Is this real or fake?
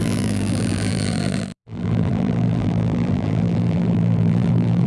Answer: fake